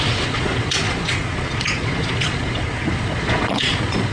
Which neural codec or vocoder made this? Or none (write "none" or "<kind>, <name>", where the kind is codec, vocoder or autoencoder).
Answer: vocoder, Vocos